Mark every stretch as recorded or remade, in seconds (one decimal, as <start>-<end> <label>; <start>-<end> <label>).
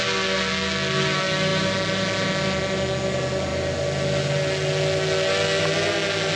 0.0-6.4 recorded